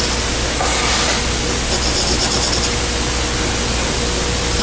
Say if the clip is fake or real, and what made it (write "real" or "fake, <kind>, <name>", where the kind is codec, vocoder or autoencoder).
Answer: real